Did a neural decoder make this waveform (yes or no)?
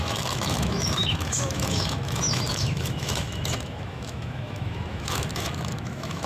yes